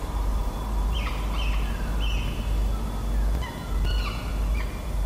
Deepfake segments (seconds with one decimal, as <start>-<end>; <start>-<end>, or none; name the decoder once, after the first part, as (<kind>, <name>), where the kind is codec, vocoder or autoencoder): 0.0-1.1 (vocoder, BigVGAN v2); 4.3-5.1